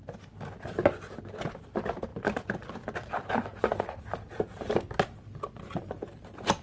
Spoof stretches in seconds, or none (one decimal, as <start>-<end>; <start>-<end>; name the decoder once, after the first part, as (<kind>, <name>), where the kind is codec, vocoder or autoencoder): none